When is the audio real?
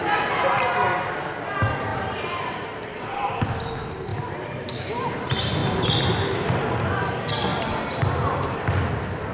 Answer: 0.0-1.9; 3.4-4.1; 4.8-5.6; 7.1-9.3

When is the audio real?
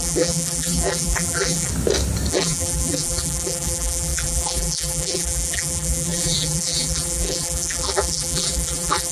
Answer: 1.7-2.3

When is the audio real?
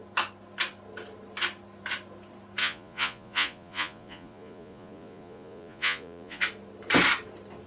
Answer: 0.0-2.6; 6.4-7.7